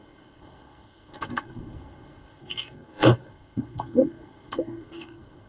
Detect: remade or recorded remade